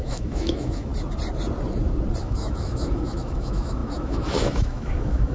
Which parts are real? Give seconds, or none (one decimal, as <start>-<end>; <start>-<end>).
0.9-2.2